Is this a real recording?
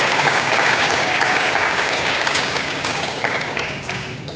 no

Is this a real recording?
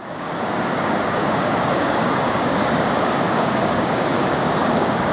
no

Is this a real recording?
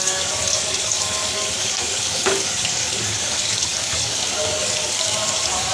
no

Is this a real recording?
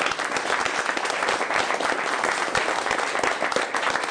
yes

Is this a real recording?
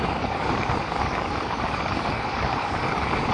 no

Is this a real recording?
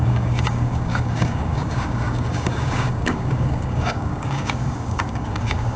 no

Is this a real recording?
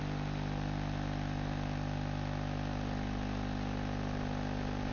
yes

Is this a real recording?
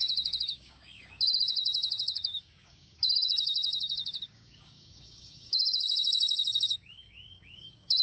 no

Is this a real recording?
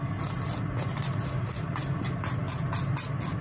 yes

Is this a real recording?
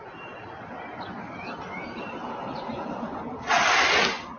yes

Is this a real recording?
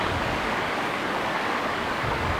no